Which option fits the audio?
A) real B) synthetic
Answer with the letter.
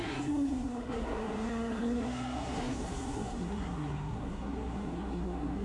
B